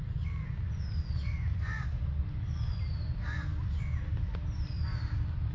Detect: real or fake real